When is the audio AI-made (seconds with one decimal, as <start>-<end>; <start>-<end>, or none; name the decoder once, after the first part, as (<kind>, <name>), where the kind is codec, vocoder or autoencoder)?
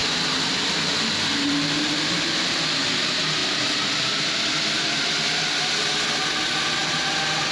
none